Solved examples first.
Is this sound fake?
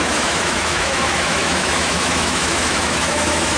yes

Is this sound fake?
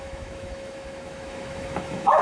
yes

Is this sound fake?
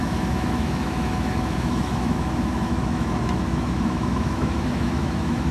yes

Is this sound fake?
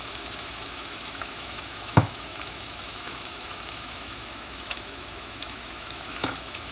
yes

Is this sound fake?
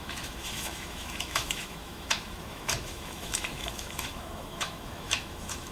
yes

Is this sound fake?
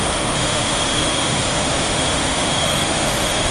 yes